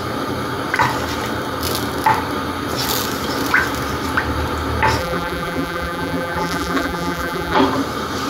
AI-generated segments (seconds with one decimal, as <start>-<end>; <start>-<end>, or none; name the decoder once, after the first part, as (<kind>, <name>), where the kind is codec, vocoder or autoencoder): 5.0-7.6 (vocoder, BigVGAN v2)